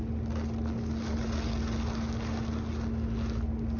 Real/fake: real